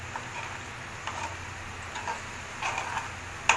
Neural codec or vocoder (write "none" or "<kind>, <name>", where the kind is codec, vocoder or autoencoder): none